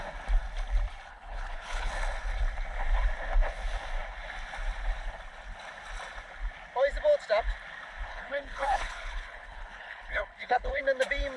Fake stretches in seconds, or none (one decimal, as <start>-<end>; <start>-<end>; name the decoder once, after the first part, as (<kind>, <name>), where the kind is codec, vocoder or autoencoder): 1.1-1.9 (codec, HILCodec); 8.1-10.8